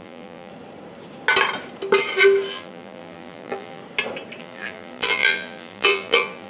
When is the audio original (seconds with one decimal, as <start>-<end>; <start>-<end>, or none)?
0.5-2.5; 3.8-4.4